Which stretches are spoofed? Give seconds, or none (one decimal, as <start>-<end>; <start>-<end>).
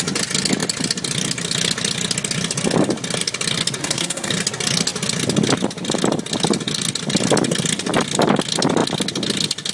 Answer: 3.8-4.3